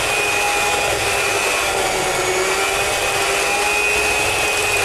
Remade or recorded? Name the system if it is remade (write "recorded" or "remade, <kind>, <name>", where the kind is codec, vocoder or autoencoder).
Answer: recorded